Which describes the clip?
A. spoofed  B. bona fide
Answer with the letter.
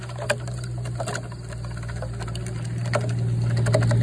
B